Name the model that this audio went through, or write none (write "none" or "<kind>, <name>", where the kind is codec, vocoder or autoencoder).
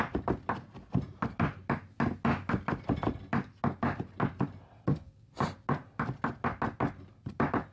none